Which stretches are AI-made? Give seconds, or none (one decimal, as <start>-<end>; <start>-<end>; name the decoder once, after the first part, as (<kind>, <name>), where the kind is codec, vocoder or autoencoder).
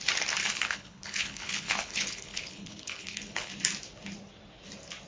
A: 0.4-3.5 (codec, HILCodec)